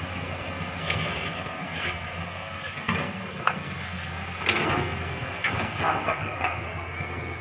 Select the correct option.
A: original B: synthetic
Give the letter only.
B